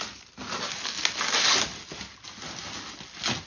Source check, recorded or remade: recorded